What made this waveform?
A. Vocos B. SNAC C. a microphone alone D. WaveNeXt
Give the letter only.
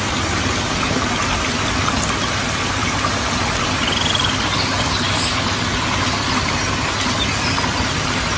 C